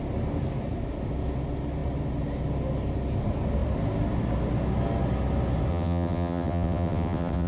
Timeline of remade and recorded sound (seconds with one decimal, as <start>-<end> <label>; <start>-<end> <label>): 0.0-5.7 recorded; 5.7-7.5 remade

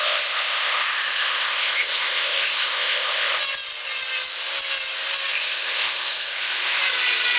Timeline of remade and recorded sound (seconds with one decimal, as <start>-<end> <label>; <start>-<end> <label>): 0.0-3.4 remade; 3.4-5.3 recorded; 5.3-6.8 remade; 6.8-7.4 recorded

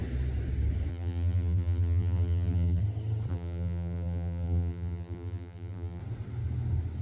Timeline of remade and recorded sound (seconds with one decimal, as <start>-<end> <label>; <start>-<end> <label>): 0.0-0.9 recorded; 0.9-2.8 remade; 2.8-3.3 recorded; 3.3-6.0 remade; 6.0-7.0 recorded

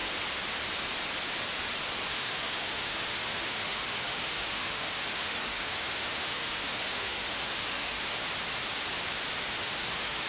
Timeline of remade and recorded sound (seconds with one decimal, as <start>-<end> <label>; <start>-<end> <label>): 0.0-2.1 recorded; 2.1-8.2 remade; 8.2-9.5 recorded; 9.5-10.3 remade

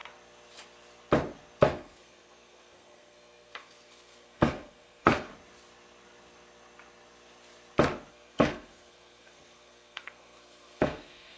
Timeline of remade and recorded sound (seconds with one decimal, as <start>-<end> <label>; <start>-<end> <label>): 0.0-1.6 recorded; 1.6-5.3 remade; 5.3-8.1 recorded; 8.1-11.4 remade

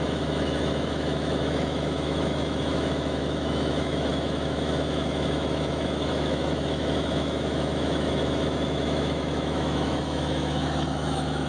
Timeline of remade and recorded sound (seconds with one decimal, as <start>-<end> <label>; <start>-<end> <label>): 0.0-11.5 remade

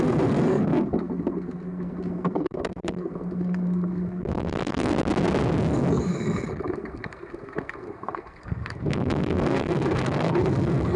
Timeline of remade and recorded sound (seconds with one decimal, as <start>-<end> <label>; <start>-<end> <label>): 0.0-4.9 remade; 4.9-5.8 recorded; 5.8-11.0 remade

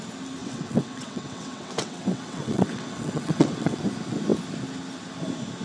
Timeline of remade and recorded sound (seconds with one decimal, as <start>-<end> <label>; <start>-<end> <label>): 0.0-0.4 recorded; 0.4-3.8 remade; 3.8-5.6 recorded